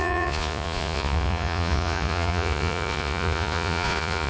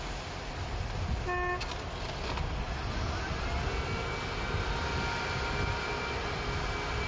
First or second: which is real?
second